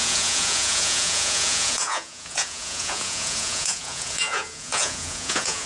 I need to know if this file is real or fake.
fake